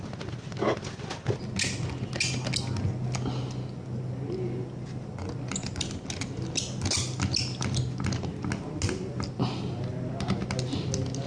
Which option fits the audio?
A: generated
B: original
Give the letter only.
B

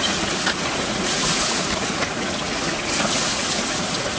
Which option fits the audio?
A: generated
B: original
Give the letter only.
A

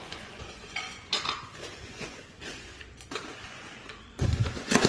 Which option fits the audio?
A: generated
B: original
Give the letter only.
A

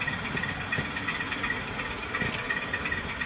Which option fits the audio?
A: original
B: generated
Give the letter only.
A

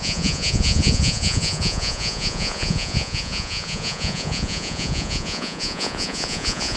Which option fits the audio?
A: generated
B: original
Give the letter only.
A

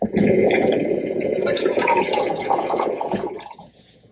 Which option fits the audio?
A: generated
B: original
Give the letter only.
A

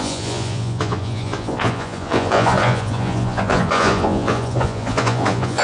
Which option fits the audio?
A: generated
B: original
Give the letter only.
A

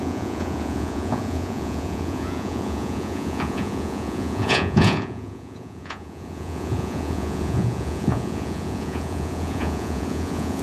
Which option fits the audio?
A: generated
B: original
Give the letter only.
A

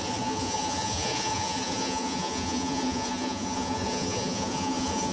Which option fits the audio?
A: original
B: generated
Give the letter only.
B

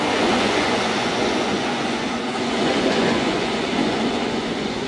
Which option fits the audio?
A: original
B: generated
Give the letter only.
B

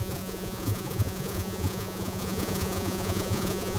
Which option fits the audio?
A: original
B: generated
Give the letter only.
B